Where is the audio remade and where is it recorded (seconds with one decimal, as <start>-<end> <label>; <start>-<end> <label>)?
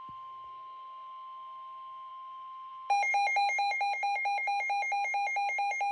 0.0-5.9 recorded